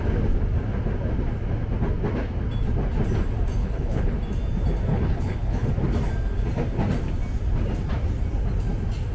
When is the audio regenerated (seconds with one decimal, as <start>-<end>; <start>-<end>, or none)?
3.6-4.1; 4.9-5.7